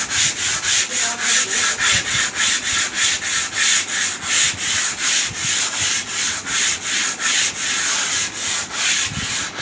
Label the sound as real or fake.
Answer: real